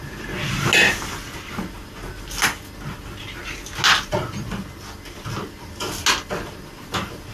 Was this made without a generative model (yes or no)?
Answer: yes